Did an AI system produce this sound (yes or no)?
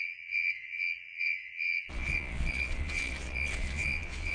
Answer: yes